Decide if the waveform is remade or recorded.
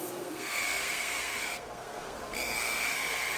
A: remade